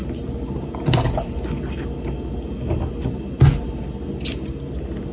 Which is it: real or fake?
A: real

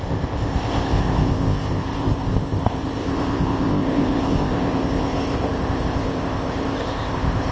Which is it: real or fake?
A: fake